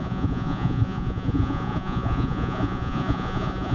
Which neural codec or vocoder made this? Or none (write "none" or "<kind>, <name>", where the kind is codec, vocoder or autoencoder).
vocoder, Vocos